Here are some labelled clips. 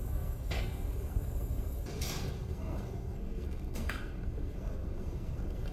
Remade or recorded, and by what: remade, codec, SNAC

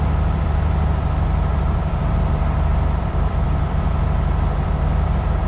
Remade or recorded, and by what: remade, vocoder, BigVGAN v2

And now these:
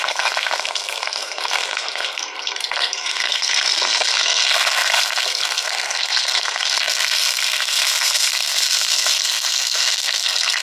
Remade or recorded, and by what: remade, codec, SNAC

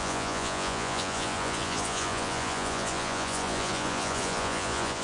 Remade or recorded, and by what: remade, vocoder, Vocos